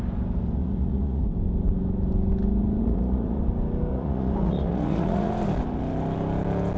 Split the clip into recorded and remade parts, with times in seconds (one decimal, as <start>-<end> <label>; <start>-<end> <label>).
0.0-0.6 recorded; 0.6-1.2 remade; 1.2-2.8 recorded; 2.8-3.4 remade; 3.4-3.9 recorded; 3.9-5.3 remade; 5.3-6.8 recorded